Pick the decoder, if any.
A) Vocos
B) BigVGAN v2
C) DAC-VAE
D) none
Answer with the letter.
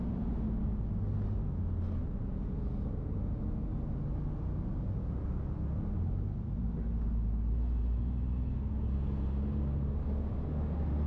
D